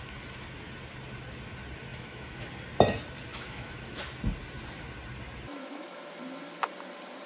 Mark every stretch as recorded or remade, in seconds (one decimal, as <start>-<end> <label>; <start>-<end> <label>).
0.0-1.9 recorded; 1.9-2.5 remade; 2.5-3.3 recorded; 3.3-4.0 remade; 4.0-5.6 recorded; 5.6-6.2 remade; 6.2-7.3 recorded